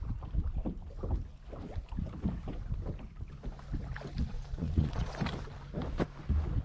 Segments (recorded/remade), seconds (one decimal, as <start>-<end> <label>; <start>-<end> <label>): 0.0-4.2 recorded; 4.2-5.1 remade; 5.1-6.6 recorded